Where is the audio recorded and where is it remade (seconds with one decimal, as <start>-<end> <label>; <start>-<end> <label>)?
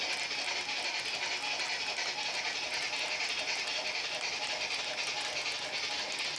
0.0-6.4 recorded